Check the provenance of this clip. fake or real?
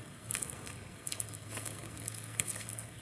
fake